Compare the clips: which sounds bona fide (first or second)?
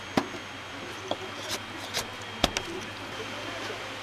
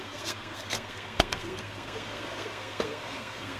first